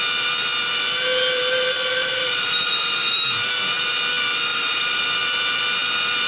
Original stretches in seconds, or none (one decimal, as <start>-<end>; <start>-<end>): 0.0-2.0; 2.7-4.5; 5.0-6.3